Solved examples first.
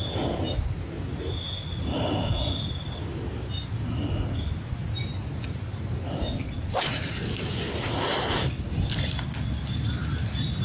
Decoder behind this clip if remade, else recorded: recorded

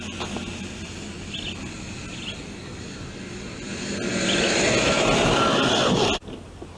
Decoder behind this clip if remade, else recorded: recorded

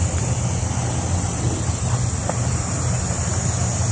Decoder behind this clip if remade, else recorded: recorded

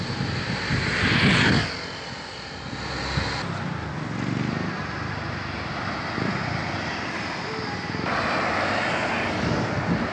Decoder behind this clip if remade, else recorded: recorded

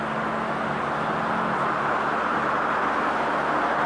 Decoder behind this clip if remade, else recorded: recorded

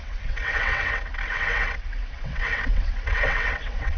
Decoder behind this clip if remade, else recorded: remade, vocoder, WaveNeXt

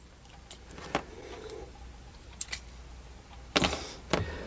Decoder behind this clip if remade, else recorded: recorded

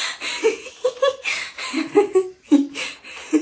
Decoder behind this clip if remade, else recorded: recorded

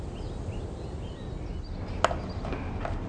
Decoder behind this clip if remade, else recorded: recorded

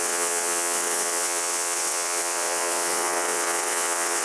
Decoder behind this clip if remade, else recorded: remade, vocoder, WaveNeXt